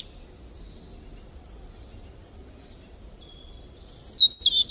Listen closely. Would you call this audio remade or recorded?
recorded